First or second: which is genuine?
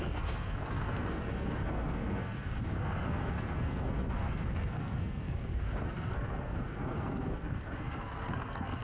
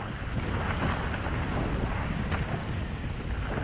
second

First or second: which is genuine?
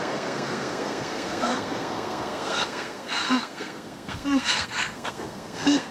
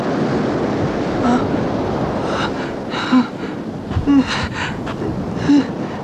second